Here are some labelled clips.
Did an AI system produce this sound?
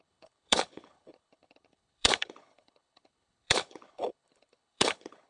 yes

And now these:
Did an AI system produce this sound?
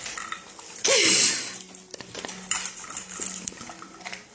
yes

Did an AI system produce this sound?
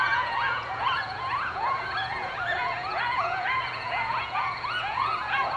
yes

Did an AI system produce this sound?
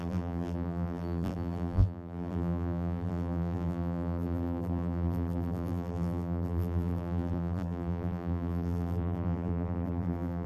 yes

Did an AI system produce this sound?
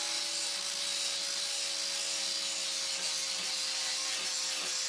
no